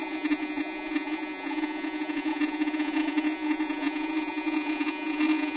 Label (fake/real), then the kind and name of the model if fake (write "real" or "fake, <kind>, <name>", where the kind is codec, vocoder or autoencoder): fake, vocoder, Vocos